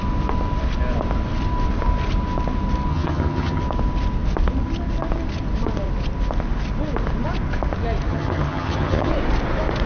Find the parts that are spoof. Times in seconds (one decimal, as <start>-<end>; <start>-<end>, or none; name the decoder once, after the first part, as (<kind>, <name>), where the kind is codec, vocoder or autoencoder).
2.9-3.6 (vocoder, HiFi-GAN); 8.1-9.1

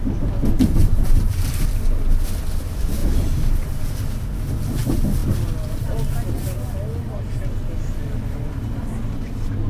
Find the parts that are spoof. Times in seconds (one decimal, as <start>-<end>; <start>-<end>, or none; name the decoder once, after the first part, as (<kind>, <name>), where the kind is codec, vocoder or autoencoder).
0.8-1.6 (vocoder, BigVGAN v2); 3.0-3.8

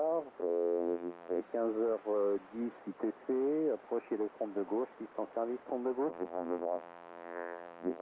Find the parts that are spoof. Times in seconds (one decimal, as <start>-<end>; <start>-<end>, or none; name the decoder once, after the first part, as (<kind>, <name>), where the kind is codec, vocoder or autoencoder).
0.4-1.4 (vocoder, BigVGAN v2); 6.1-8.0

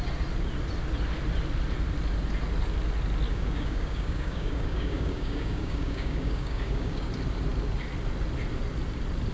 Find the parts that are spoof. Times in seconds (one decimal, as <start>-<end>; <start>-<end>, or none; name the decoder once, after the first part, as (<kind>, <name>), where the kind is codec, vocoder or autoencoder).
3.3-7.1 (codec, DAC)

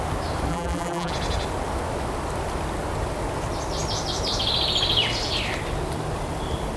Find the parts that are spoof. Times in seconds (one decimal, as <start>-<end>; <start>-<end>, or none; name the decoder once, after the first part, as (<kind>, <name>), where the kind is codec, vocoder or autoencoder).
0.5-1.1 (vocoder, BigVGAN v2)

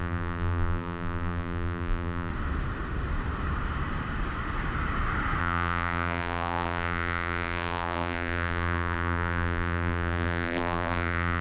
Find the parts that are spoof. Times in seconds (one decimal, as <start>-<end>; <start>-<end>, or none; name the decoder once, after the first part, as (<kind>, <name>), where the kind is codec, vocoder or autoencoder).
0.0-2.3 (vocoder, BigVGAN v2); 5.4-11.4

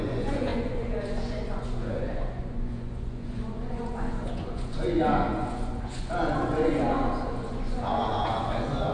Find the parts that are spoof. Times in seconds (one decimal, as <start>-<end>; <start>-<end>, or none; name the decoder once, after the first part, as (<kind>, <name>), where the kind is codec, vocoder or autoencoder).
0.0-8.9 (vocoder, Vocos)

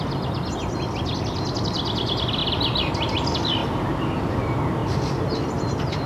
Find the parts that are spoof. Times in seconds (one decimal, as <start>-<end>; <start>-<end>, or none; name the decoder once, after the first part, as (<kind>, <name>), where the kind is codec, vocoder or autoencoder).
none